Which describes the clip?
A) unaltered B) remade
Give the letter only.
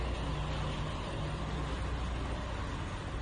A